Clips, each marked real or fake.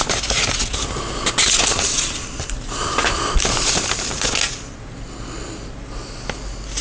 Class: real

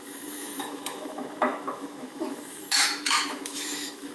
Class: fake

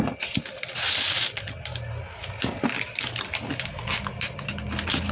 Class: real